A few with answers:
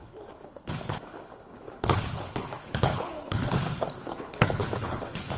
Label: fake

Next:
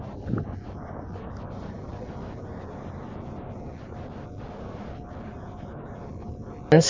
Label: real